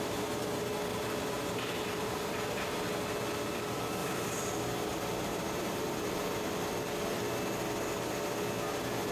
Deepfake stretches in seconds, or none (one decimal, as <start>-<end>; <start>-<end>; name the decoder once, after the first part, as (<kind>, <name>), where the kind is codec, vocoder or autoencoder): 0.9-2.3 (vocoder, BigVGAN v2); 4.0-4.5; 4.9-6.2